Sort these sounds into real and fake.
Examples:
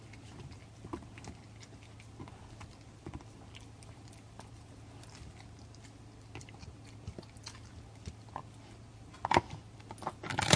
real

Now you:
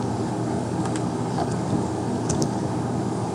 fake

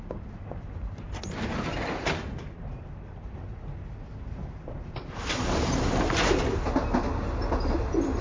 real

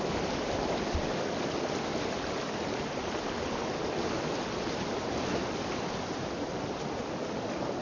real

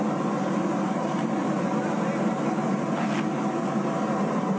real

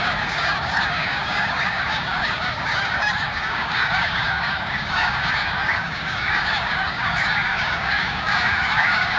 fake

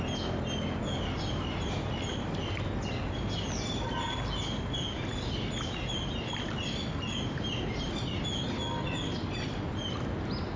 real